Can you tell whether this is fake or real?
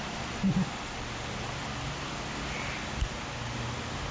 real